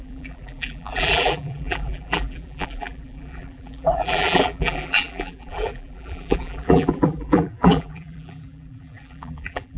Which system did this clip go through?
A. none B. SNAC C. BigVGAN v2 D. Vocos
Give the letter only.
C